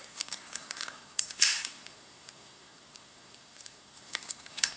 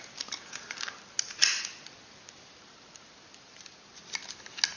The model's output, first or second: first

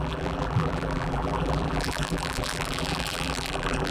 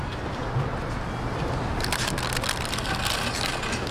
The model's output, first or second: first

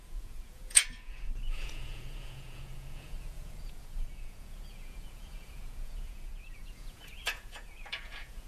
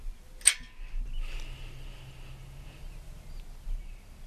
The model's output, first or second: first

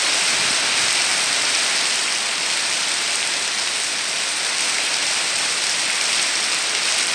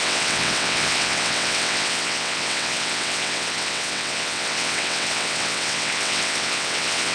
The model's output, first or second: second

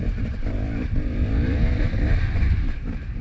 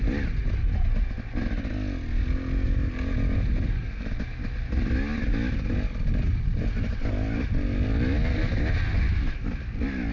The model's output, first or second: first